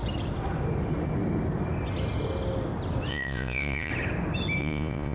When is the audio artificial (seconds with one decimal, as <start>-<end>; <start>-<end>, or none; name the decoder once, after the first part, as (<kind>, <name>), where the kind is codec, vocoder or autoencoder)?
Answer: 3.1-3.9 (vocoder, Vocos); 4.6-5.1